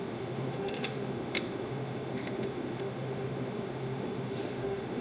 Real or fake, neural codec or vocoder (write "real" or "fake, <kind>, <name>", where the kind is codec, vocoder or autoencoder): fake, autoencoder, DAC-VAE